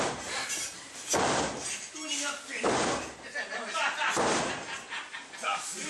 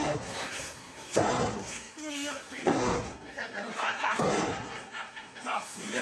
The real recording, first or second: first